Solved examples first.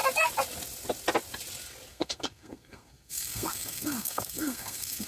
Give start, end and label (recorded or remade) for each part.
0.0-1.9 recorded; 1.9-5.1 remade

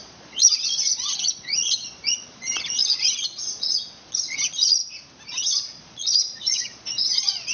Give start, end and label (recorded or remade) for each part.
0.0-4.8 remade; 4.8-5.4 recorded; 5.4-7.5 remade

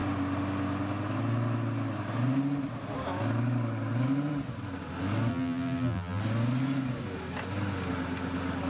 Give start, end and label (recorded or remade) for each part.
0.0-5.3 recorded; 5.3-6.2 remade; 6.2-8.7 recorded

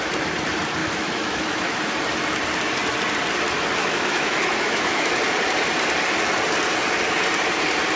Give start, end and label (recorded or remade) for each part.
0.0-0.8 recorded; 0.8-1.8 remade; 1.8-3.8 recorded; 3.8-5.1 remade; 5.1-8.0 recorded

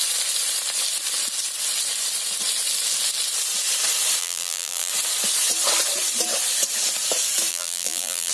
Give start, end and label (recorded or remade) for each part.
0.0-4.2 recorded; 4.2-4.9 remade; 4.9-7.5 recorded; 7.5-8.3 remade